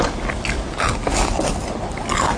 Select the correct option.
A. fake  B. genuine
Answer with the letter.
B